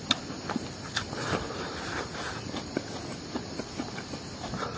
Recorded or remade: recorded